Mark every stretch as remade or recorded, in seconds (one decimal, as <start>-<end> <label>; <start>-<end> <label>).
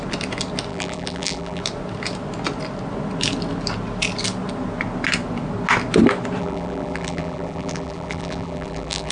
0.0-0.7 recorded; 0.7-1.6 remade; 1.6-6.4 recorded; 6.4-9.1 remade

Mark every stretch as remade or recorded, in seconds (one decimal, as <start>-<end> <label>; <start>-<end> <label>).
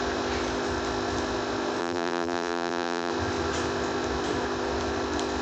0.0-1.8 recorded; 1.8-3.1 remade; 3.1-5.4 recorded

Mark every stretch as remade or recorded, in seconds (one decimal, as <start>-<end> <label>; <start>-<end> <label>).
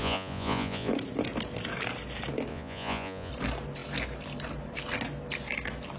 0.0-0.9 remade; 0.9-2.5 recorded; 2.5-3.3 remade; 3.3-6.0 recorded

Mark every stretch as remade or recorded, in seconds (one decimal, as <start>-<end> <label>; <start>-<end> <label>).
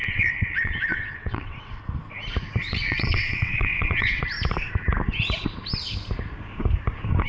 0.0-1.8 remade; 1.8-2.6 recorded; 2.6-4.2 remade; 4.2-7.3 recorded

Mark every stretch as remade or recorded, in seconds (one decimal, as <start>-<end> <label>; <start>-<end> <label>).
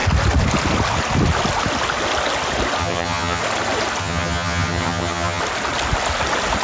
0.0-2.8 recorded; 2.8-3.4 remade; 3.4-4.0 recorded; 4.0-5.4 remade; 5.4-6.6 recorded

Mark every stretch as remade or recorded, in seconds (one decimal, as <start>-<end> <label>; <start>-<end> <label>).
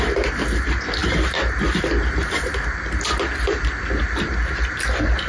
0.0-5.3 recorded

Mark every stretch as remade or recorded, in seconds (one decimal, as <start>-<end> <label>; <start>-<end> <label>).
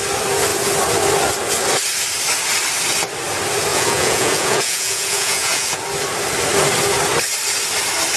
0.0-3.7 recorded; 3.7-5.8 remade; 5.8-8.2 recorded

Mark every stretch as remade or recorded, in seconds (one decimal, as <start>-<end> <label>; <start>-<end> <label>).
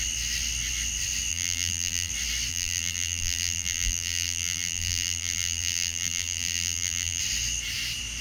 0.0-1.3 recorded; 1.3-2.1 remade; 2.1-2.5 recorded; 2.5-7.2 remade; 7.2-8.2 recorded